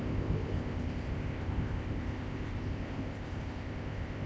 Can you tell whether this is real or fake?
fake